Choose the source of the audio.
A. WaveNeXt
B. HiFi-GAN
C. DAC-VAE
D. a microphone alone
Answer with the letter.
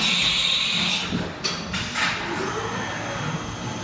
D